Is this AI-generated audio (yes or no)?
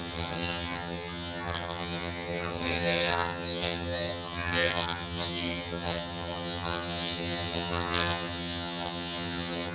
yes